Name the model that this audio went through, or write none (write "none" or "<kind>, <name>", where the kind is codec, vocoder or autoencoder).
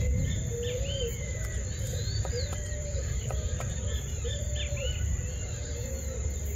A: vocoder, BigVGAN v2